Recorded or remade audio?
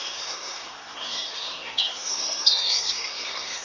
remade